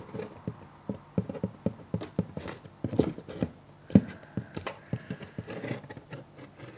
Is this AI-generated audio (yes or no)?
no